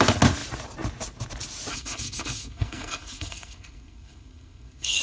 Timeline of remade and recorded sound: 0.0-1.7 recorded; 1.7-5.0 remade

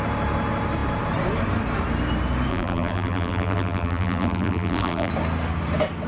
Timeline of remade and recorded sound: 0.0-2.5 recorded; 2.5-5.1 remade; 5.1-6.1 recorded

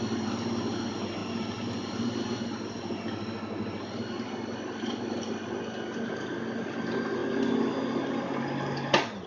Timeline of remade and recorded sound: 0.0-1.2 recorded; 1.2-2.8 remade; 2.8-9.3 recorded

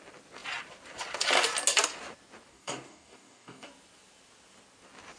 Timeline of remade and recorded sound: 0.0-2.5 recorded; 2.5-3.7 remade; 3.7-5.2 recorded

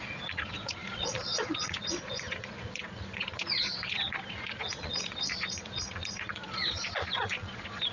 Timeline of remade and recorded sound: 0.0-7.9 remade

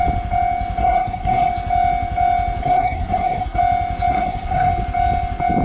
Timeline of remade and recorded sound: 0.0-0.8 recorded; 0.8-1.5 remade; 1.5-2.6 recorded; 2.6-3.6 remade; 3.6-4.1 recorded; 4.1-4.7 remade; 4.7-5.6 recorded

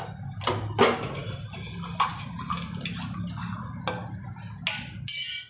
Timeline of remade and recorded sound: 0.0-5.5 recorded